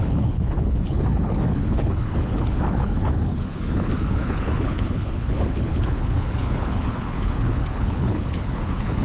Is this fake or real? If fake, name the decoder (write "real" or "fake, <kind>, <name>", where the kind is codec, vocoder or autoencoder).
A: fake, codec, HILCodec